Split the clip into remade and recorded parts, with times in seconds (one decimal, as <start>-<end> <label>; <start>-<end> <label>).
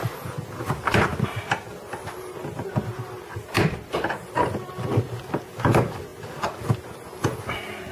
0.0-7.9 recorded